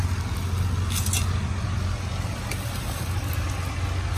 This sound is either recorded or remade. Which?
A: recorded